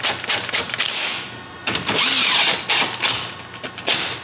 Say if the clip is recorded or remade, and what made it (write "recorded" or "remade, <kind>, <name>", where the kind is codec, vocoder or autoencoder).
recorded